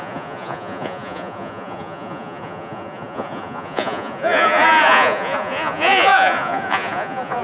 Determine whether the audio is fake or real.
fake